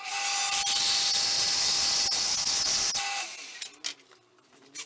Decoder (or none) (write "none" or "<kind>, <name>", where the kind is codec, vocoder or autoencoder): none